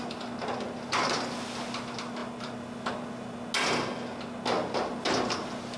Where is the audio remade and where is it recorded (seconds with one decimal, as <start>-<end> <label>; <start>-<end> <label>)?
0.0-5.8 recorded